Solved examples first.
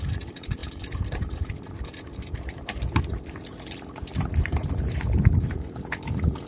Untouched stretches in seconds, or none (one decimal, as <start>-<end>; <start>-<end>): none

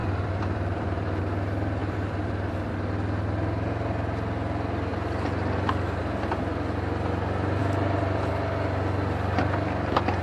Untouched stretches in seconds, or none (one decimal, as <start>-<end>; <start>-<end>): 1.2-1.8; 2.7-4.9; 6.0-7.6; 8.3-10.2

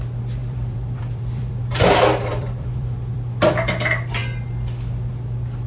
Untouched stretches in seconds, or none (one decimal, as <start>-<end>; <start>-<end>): 0.0-0.4; 3.7-5.7

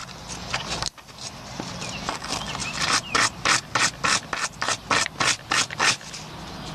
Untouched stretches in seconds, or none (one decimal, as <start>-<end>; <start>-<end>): 0.0-2.6; 3.9-6.7

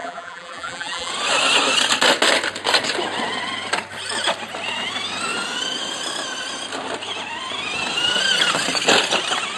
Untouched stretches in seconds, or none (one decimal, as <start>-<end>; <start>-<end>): 1.1-9.6

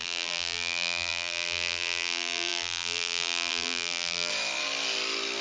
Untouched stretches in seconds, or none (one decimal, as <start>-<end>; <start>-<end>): 4.3-5.4